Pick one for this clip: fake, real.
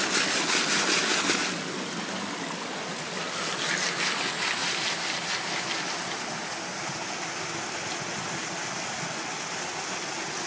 real